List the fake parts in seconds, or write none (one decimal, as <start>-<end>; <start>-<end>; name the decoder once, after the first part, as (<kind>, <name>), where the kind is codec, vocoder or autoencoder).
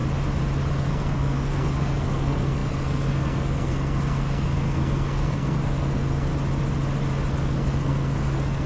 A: 0.7-6.3 (codec, SNAC); 7.3-8.7